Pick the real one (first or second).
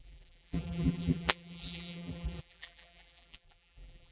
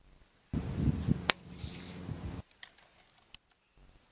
second